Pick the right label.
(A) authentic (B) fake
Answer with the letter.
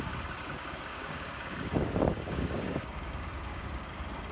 B